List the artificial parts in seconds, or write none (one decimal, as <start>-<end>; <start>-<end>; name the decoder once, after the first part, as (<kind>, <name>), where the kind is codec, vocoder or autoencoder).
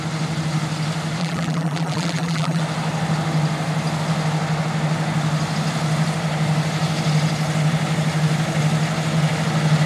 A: 1.2-2.6 (vocoder, BigVGAN v2)